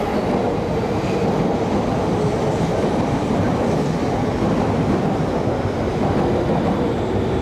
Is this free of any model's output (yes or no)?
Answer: yes